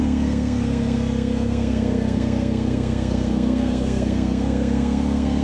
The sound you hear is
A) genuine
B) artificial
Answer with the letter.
B